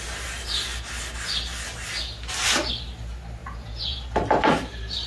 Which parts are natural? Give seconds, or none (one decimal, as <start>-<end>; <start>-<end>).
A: 0.0-3.4; 4.0-5.1